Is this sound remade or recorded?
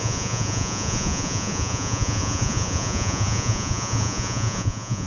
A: remade